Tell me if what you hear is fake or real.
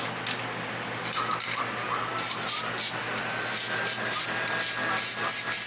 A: real